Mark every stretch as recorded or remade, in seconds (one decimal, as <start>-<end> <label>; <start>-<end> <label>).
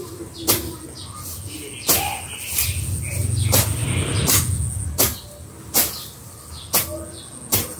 0.0-7.8 recorded